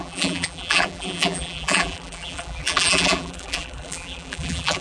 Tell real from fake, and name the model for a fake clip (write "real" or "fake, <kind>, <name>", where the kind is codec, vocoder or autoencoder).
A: fake, vocoder, BigVGAN v2